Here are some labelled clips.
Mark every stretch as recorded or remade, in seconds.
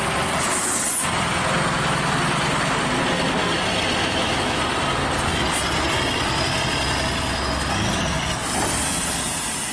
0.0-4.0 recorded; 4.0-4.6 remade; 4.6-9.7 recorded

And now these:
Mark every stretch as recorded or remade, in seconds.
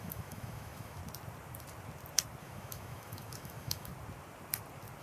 0.0-1.0 remade; 1.0-2.4 recorded; 2.4-3.9 remade; 3.9-5.0 recorded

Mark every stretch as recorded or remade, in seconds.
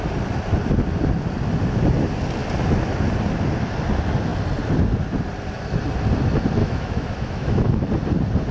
0.0-6.6 recorded; 6.6-7.9 remade; 7.9-8.5 recorded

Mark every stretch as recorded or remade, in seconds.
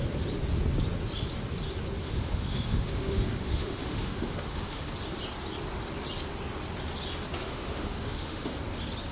0.0-2.0 recorded; 2.0-4.9 remade; 4.9-7.4 recorded; 7.4-8.6 remade; 8.6-9.1 recorded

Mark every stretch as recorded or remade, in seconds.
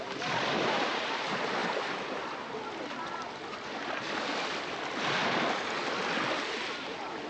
0.0-7.3 recorded